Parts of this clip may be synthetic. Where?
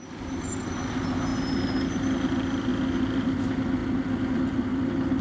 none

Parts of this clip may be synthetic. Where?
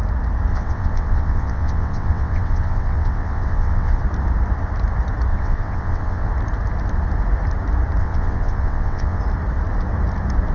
0.5-4.0; 5.3-6.3; 8.0-9.2